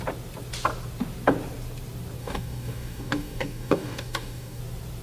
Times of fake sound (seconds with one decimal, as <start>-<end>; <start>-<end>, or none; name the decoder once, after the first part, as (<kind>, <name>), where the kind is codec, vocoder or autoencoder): 2.2-4.6 (codec, DAC)